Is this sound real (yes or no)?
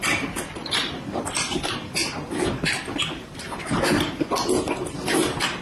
no